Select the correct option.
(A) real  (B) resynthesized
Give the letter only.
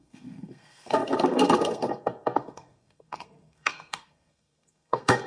B